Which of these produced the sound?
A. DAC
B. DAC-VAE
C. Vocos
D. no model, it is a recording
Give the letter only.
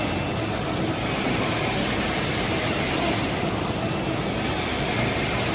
D